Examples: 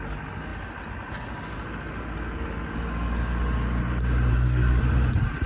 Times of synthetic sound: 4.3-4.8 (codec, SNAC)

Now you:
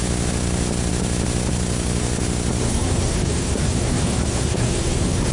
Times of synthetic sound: 2.6-5.3 (codec, SNAC)